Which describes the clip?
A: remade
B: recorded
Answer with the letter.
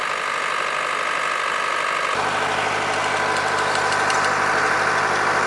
B